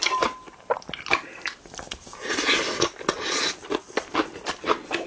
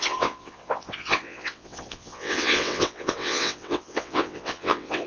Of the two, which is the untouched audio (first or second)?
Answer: first